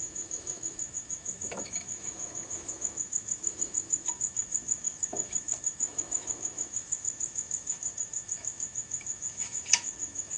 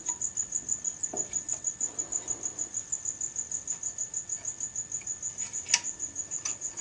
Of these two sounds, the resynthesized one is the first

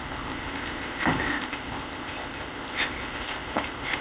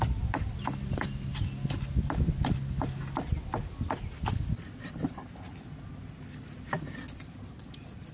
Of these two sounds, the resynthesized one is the first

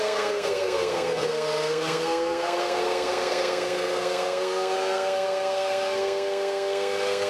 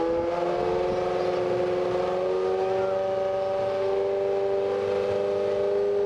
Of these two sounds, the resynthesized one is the first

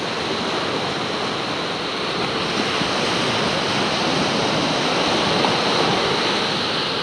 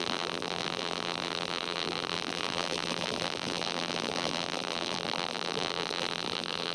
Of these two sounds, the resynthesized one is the second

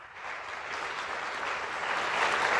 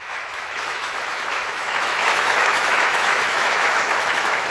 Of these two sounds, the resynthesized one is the second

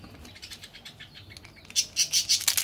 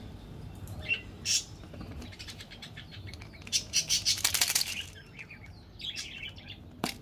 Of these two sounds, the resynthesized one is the second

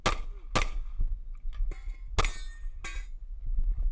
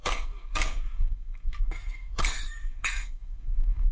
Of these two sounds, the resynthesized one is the second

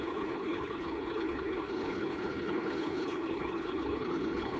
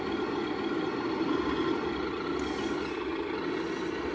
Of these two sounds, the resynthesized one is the first